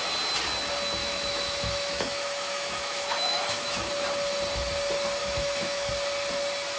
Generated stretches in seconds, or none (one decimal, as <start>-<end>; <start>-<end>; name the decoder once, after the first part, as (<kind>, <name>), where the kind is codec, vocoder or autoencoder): 1.0-3.9 (autoencoder, DAC-VAE); 5.2-5.9